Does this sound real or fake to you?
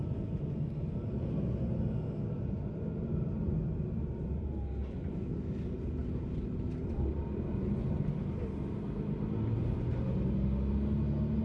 real